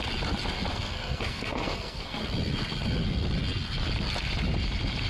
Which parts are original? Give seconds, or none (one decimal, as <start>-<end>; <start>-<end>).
0.0-0.7; 2.2-5.1